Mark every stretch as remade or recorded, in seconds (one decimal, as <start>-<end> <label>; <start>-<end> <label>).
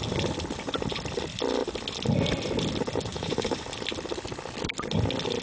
0.0-3.1 recorded; 3.1-3.7 remade; 3.7-5.4 recorded